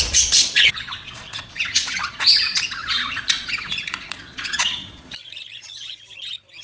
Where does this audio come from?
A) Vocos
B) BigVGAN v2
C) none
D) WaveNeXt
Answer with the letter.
A